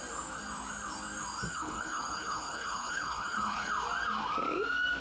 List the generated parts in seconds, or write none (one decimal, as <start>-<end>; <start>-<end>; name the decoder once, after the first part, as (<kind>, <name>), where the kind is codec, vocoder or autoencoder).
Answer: 1.5-3.7 (codec, HILCodec)